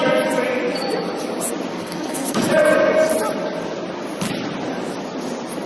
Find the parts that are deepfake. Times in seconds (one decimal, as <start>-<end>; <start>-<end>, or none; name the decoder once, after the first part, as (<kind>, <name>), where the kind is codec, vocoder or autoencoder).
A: 1.7-2.5 (codec, SNAC)